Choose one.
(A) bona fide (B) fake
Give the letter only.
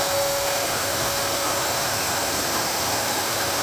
B